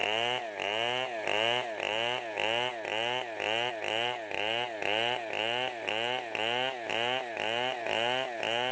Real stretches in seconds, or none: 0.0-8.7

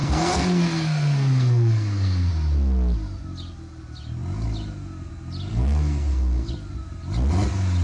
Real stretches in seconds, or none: 2.3-5.5; 6.5-7.8